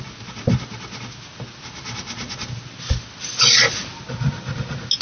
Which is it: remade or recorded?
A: recorded